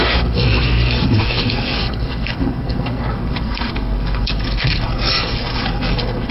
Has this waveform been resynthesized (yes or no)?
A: yes